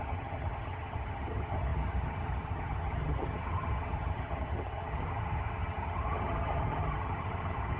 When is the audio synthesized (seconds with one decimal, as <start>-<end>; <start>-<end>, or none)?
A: 0.0-7.8